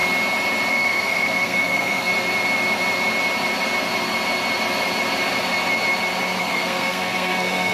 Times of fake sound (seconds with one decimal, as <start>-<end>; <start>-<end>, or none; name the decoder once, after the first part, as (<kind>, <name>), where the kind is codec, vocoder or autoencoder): 0.7-2.1 (codec, SNAC); 6.4-7.7